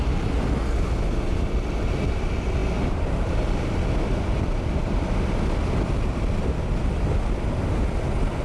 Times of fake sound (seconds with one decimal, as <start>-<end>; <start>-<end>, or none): none